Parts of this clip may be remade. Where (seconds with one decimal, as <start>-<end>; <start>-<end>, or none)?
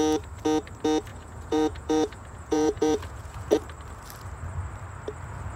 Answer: 1.1-3.5